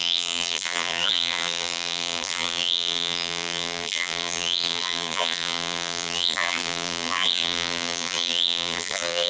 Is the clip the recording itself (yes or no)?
no